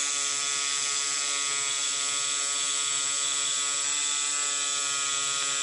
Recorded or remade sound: recorded